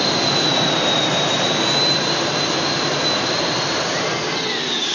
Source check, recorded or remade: recorded